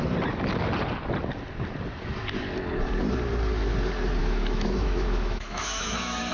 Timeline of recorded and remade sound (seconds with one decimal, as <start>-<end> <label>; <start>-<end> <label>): 0.0-4.2 recorded; 4.2-6.3 remade